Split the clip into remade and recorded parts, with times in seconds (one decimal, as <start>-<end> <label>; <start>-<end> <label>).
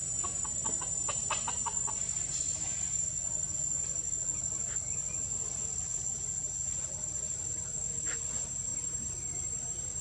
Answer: 0.0-8.7 recorded; 8.7-10.0 remade